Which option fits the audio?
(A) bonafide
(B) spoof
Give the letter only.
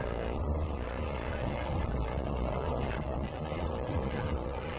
B